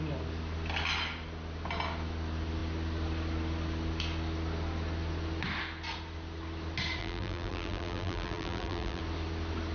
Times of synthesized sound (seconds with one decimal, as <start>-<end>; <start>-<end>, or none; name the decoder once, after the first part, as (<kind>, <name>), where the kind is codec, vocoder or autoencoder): 7.0-9.0 (vocoder, BigVGAN v2)

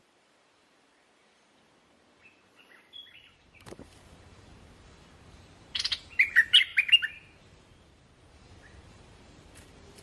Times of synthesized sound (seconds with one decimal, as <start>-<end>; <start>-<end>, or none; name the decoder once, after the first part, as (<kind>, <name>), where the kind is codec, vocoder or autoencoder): 0.0-6.7 (vocoder, BigVGAN v2); 7.4-10.0

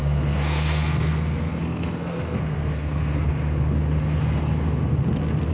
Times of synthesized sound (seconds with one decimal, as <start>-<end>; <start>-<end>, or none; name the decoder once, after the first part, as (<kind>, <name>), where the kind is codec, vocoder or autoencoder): 0.0-3.3 (codec, SNAC)

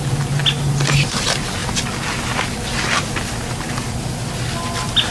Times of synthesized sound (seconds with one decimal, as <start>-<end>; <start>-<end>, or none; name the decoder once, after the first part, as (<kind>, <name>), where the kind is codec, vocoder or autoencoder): none